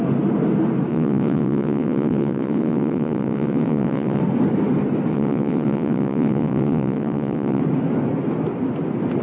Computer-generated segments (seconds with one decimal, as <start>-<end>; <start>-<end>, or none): 0.9-4.2; 5.1-7.6